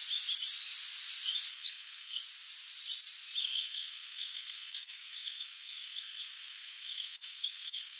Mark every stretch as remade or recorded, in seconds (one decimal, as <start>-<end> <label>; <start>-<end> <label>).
0.0-1.5 recorded; 1.5-2.2 remade; 2.2-3.4 recorded; 3.4-8.0 remade

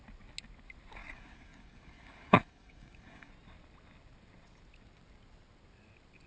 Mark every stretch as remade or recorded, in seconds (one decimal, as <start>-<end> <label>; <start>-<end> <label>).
0.0-1.0 recorded; 1.0-3.3 remade; 3.3-6.3 recorded

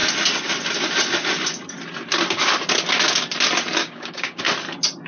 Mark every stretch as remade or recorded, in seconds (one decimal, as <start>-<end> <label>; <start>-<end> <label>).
0.0-3.8 recorded; 3.8-4.4 remade; 4.4-5.1 recorded

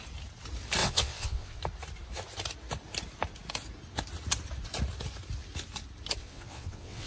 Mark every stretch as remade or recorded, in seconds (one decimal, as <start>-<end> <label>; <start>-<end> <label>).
0.0-0.8 recorded; 0.8-1.6 remade; 1.6-6.2 recorded; 6.2-7.1 remade

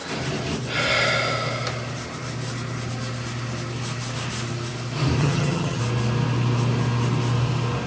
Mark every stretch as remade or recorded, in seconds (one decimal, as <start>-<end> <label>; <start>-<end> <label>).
0.0-5.2 recorded; 5.2-5.8 remade; 5.8-7.9 recorded